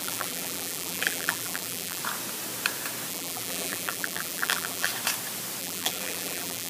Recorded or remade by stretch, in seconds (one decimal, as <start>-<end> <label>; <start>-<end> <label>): 0.0-2.0 remade; 2.0-3.1 recorded; 3.1-4.9 remade; 4.9-5.6 recorded; 5.6-6.7 remade